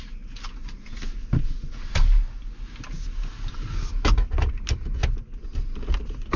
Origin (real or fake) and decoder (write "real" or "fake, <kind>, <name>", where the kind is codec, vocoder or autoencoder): real